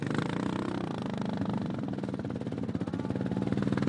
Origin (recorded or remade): recorded